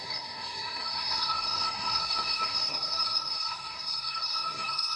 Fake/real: fake